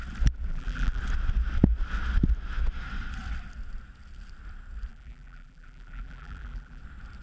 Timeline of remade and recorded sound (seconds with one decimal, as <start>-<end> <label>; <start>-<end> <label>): 0.0-0.5 recorded; 0.5-1.0 remade; 1.0-4.9 recorded; 4.9-6.8 remade; 6.8-7.2 recorded